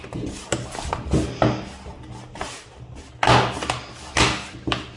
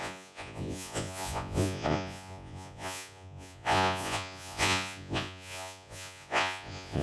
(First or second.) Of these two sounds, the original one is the first